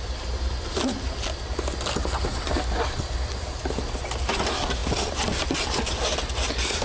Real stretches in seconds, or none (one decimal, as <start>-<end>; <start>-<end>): 0.0-6.8